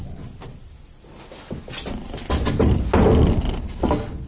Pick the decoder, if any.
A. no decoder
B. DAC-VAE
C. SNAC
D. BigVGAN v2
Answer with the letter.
A